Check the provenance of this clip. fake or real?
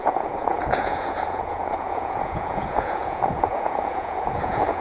fake